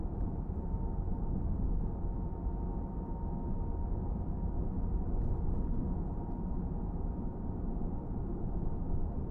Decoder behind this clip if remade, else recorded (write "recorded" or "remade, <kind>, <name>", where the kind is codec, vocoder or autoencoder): recorded